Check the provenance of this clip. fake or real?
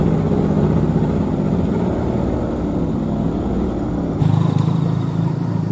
real